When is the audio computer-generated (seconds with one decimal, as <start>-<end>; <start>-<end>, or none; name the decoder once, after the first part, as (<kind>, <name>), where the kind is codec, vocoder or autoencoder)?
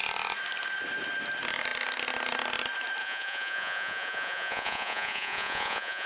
3.0-6.1 (vocoder, Vocos)